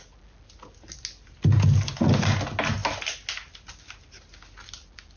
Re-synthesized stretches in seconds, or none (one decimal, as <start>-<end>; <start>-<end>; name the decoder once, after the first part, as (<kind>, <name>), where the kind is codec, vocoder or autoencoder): none